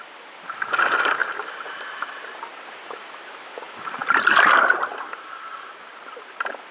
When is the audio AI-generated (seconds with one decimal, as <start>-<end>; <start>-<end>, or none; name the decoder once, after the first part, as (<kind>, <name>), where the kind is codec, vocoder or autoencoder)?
0.0-1.2 (vocoder, BigVGAN v2); 2.7-4.0; 5.1-6.7